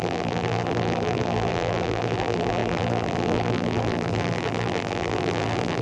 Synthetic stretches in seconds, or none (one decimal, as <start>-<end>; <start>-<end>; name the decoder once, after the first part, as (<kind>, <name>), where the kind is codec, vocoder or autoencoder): 0.0-5.8 (vocoder, BigVGAN v2)